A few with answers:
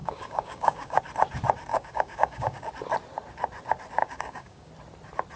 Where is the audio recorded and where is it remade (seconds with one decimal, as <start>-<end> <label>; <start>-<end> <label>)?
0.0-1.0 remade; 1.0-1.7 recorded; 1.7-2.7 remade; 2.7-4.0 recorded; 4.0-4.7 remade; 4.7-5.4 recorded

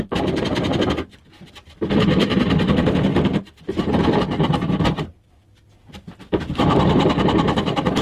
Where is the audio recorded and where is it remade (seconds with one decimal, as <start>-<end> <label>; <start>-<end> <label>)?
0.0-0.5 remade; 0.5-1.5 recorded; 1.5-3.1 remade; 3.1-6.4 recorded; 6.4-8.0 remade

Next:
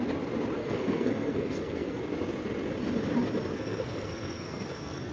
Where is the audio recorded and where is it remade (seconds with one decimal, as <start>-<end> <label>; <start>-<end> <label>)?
0.0-0.6 recorded; 0.6-2.0 remade; 2.0-3.5 recorded; 3.5-5.1 remade

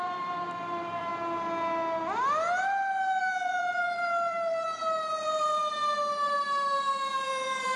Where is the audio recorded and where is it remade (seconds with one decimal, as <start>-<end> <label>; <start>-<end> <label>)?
0.0-1.1 remade; 1.1-3.2 recorded; 3.2-5.6 remade; 5.6-7.1 recorded; 7.1-7.8 remade

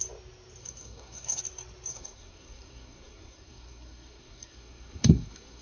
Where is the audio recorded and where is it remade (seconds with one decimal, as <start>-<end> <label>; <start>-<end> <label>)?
0.0-0.6 recorded; 0.6-1.4 remade; 1.4-1.9 recorded; 1.9-5.6 remade